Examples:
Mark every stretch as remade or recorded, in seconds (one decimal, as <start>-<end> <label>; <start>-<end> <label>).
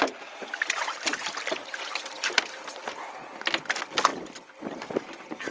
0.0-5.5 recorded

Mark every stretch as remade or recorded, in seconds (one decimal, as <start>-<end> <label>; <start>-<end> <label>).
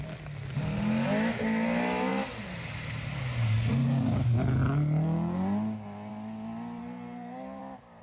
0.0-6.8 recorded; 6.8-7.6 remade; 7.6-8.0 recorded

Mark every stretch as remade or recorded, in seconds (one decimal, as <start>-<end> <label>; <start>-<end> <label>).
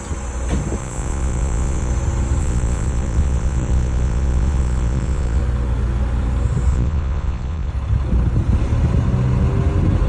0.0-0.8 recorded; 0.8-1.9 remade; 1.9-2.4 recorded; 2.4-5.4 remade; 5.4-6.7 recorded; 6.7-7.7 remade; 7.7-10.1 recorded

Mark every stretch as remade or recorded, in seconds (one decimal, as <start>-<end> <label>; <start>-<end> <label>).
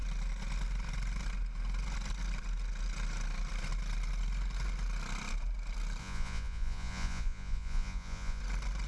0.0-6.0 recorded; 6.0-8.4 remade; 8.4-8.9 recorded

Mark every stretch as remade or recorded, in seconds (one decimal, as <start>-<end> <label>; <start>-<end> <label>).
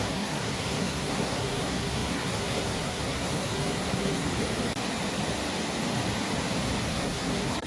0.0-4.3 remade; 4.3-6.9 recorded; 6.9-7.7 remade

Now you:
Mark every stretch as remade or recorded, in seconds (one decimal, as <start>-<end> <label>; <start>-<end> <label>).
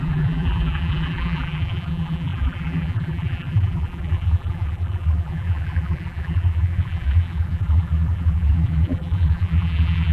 0.0-10.1 remade